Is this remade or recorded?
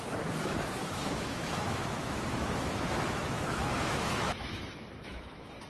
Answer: remade